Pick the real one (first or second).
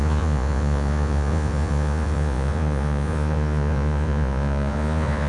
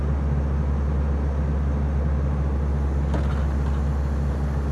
second